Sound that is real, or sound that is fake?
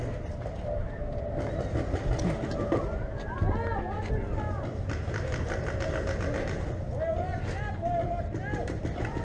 real